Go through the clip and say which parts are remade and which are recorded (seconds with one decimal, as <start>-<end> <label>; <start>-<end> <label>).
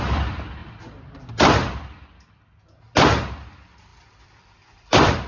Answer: 0.0-0.6 recorded; 0.6-2.6 remade; 2.6-3.9 recorded; 3.9-5.3 remade